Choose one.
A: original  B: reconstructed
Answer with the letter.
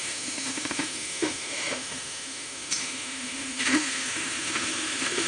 B